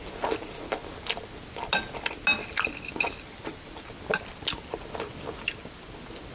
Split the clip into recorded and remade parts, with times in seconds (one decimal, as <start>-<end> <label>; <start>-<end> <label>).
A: 0.0-6.3 recorded